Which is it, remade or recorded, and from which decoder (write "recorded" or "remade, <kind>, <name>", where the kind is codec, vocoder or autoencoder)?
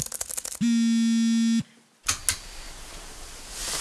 recorded